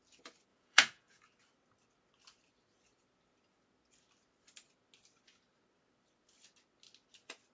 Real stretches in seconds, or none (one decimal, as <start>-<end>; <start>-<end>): 0.0-0.5; 1.2-7.5